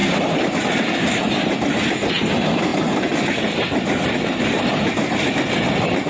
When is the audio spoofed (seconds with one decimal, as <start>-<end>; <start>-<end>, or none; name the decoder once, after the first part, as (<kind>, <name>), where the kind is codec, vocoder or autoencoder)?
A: none